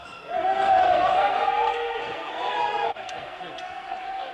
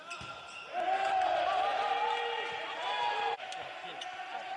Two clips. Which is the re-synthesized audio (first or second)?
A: first